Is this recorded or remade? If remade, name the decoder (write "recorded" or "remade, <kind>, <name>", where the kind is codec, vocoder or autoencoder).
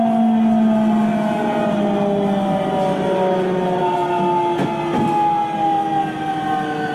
recorded